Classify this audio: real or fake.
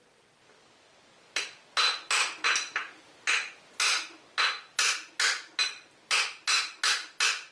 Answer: real